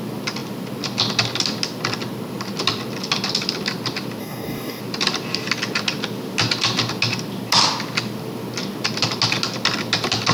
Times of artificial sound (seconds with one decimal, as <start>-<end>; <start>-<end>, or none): 4.2-4.8